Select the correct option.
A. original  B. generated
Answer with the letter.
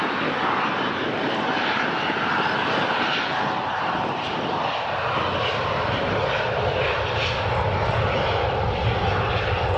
A